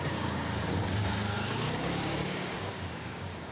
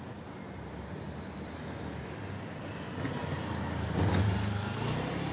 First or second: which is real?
second